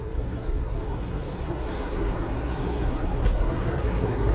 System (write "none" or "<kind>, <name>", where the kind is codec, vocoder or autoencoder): codec, SNAC